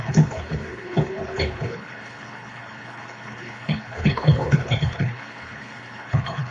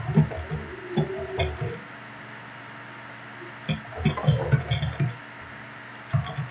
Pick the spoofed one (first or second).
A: first